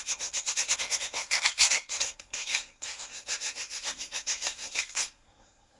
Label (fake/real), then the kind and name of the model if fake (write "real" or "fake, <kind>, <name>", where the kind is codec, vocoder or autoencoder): fake, codec, SNAC